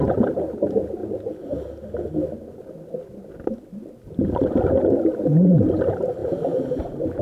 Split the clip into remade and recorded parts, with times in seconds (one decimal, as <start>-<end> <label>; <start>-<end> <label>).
0.0-1.0 remade; 1.0-5.2 recorded; 5.2-7.2 remade